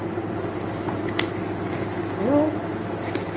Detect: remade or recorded recorded